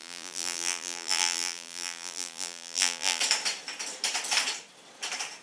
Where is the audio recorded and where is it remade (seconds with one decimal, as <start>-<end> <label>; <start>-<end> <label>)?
0.0-3.2 remade; 3.2-5.4 recorded